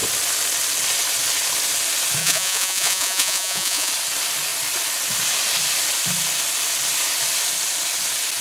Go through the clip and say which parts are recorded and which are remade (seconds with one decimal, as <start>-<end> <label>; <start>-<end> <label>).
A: 0.0-2.2 recorded; 2.2-3.9 remade; 3.9-8.4 recorded

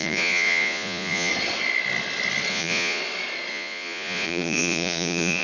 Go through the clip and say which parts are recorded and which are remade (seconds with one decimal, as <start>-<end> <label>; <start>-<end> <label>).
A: 0.0-1.3 remade; 1.3-2.5 recorded; 2.5-3.0 remade; 3.0-3.5 recorded; 3.5-5.4 remade

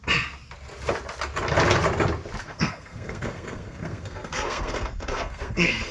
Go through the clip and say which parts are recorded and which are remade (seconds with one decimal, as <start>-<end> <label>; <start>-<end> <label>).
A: 0.0-2.4 recorded; 2.4-5.9 remade

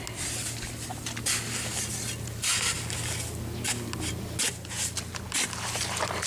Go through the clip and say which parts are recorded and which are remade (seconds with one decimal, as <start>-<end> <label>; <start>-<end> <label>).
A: 0.0-6.3 recorded

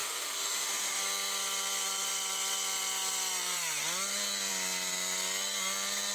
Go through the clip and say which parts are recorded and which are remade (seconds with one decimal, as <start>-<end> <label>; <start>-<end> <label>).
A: 0.0-1.0 remade; 1.0-6.1 recorded

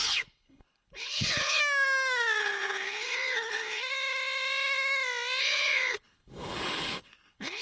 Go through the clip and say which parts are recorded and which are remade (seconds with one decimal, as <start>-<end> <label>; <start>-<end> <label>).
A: 0.0-1.6 remade; 1.6-2.4 recorded; 2.4-3.8 remade; 3.8-5.4 recorded; 5.4-7.6 remade